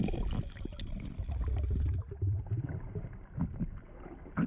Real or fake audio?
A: real